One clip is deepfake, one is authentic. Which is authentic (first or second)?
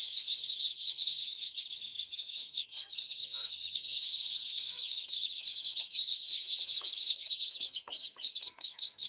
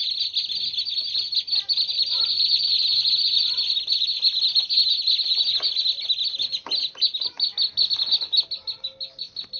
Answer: second